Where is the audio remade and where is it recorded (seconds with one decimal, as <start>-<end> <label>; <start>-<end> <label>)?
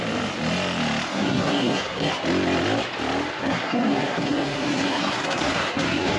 0.0-1.1 recorded; 1.1-2.1 remade; 2.1-3.4 recorded; 3.4-6.2 remade